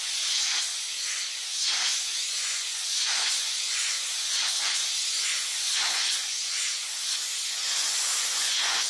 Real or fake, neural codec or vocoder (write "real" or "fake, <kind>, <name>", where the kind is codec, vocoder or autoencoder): fake, vocoder, Vocos